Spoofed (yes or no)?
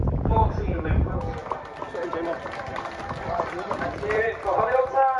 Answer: yes